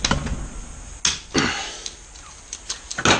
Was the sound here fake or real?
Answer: real